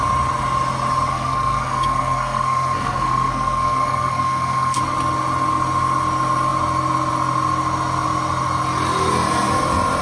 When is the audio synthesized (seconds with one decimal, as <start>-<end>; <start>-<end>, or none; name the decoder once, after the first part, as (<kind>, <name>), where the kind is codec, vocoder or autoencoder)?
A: 1.1-4.8 (codec, SNAC)